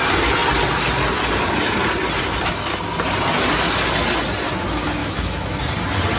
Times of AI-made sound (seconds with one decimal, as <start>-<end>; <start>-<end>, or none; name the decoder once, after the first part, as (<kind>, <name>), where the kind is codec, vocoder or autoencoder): 5.0-5.6 (autoencoder, DAC-VAE)